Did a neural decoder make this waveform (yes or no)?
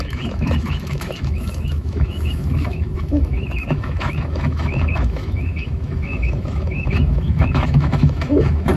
yes